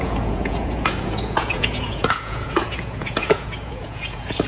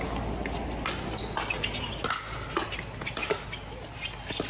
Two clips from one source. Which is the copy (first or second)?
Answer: first